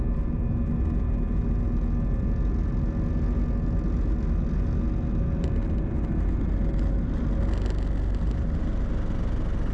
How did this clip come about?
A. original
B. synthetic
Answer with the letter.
A